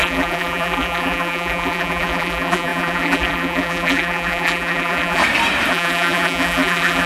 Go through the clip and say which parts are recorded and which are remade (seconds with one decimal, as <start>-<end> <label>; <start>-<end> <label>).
0.0-5.2 remade; 5.2-5.7 recorded; 5.7-7.1 remade